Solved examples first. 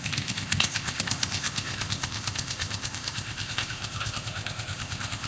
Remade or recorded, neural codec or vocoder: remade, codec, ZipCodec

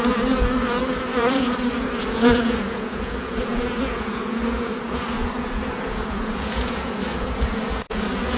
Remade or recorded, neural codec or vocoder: remade, vocoder, Vocos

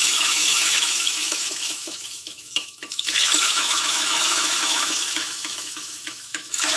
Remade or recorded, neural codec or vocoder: remade, autoencoder, DAC-VAE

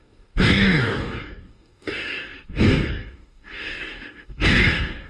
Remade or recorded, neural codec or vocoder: remade, codec, DAC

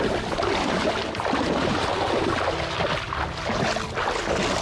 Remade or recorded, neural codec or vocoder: recorded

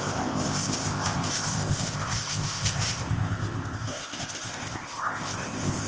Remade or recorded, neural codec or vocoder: remade, codec, ZipCodec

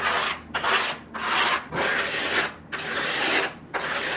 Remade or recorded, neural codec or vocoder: recorded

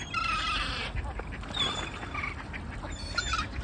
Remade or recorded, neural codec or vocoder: recorded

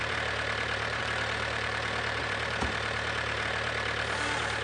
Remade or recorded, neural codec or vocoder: remade, vocoder, BigVGAN v2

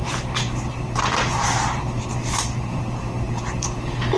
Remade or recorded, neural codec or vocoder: remade, vocoder, BigVGAN v2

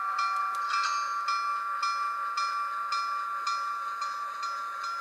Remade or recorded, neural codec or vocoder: recorded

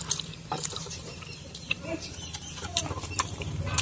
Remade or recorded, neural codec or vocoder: remade, vocoder, BigVGAN v2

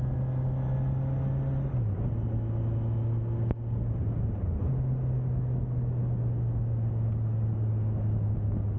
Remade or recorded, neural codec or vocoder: recorded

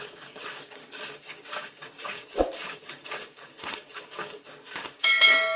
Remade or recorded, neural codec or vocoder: remade, codec, DAC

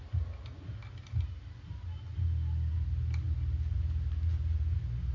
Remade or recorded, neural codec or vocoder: recorded